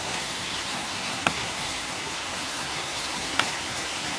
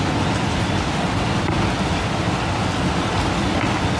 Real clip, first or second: second